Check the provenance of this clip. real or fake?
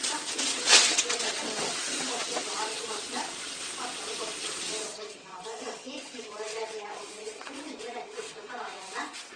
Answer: fake